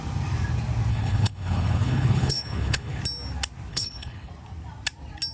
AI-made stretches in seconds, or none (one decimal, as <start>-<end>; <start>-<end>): 0.9-3.0; 3.7-4.3